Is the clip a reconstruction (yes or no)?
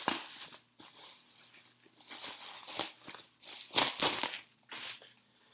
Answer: no